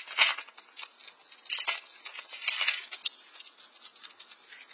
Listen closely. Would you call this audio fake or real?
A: real